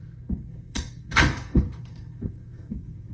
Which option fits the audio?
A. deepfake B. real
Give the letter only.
A